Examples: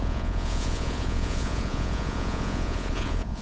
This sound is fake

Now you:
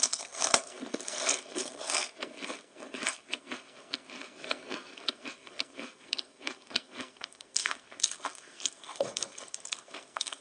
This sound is fake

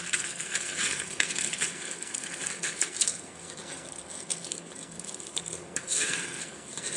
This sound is fake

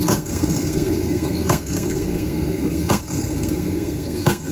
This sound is fake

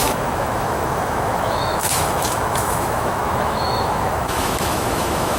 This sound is fake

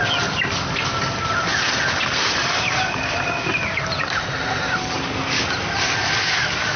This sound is real